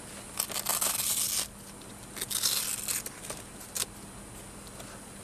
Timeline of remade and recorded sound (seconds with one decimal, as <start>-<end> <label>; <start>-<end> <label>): 0.0-5.2 recorded